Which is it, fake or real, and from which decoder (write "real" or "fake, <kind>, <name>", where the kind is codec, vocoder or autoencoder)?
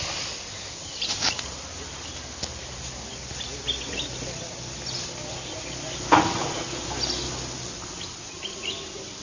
real